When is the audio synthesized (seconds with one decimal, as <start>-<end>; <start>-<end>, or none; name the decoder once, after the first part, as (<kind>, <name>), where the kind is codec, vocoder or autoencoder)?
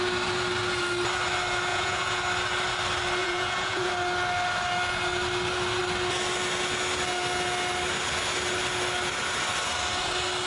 1.7-2.2 (vocoder, Vocos); 3.2-3.9